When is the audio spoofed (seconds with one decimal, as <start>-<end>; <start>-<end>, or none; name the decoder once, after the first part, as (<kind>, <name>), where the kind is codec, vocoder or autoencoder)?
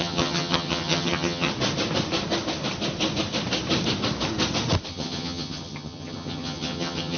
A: 0.0-1.5 (vocoder, HiFi-GAN); 4.9-7.2